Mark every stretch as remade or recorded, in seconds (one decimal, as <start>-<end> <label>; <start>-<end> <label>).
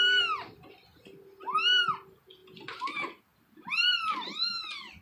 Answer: 0.0-0.9 remade; 0.9-1.7 recorded; 1.7-2.4 remade; 2.4-2.9 recorded; 2.9-5.0 remade